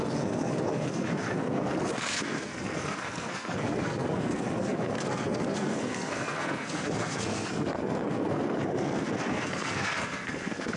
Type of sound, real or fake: fake